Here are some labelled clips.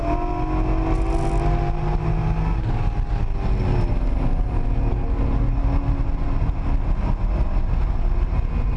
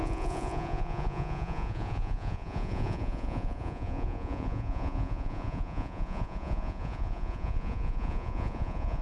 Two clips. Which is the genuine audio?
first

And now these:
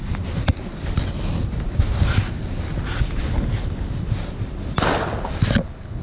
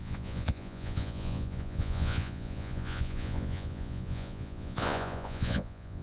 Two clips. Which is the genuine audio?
first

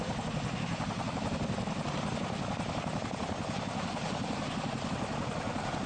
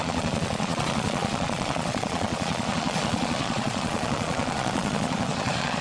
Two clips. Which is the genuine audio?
first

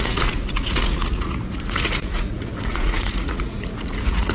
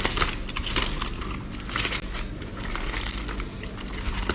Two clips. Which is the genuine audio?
second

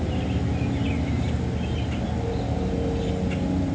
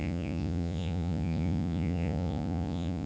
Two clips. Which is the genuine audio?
first